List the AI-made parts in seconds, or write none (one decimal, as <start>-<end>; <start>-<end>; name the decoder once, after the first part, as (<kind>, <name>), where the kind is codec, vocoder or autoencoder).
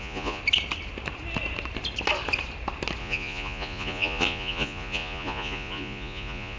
0.0-0.4 (vocoder, Vocos); 3.0-6.6